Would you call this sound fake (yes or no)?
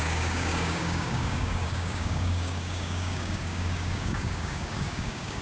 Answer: yes